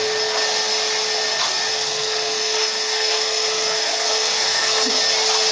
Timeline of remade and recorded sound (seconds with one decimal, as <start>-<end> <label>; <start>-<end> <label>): 0.0-1.7 recorded; 1.7-5.0 remade; 5.0-5.5 recorded